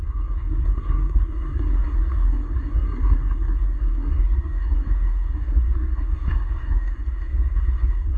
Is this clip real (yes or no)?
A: no